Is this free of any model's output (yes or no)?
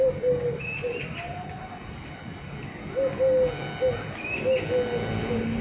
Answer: yes